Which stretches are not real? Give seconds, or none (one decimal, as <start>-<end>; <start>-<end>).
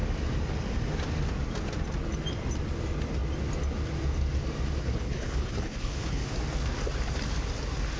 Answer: 4.8-6.3